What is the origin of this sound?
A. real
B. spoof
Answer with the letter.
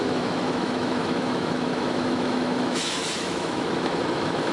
B